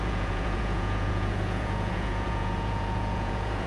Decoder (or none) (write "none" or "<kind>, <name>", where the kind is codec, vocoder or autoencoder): vocoder, Vocos